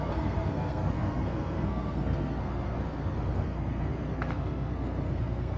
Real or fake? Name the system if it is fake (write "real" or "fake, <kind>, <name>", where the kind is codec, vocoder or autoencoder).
fake, codec, SNAC